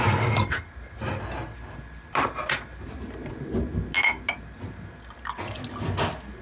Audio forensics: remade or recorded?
recorded